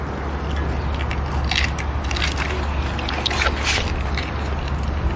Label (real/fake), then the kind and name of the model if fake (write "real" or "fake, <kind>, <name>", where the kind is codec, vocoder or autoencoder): real